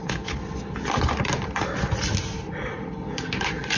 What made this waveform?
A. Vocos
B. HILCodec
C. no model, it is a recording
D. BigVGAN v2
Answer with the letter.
C